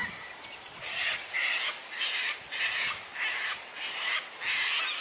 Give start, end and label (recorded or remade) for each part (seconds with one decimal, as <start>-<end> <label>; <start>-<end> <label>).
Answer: 0.0-5.0 recorded